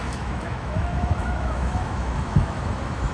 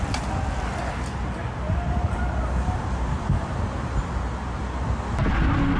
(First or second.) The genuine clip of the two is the second